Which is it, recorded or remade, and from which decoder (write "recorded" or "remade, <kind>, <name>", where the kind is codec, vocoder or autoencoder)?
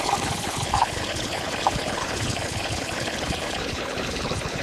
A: remade, codec, HILCodec